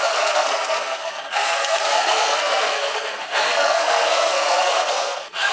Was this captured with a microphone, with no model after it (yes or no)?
no